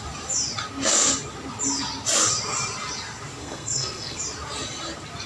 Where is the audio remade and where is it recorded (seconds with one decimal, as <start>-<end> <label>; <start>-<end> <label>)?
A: 0.0-3.4 recorded; 3.4-4.2 remade; 4.2-5.3 recorded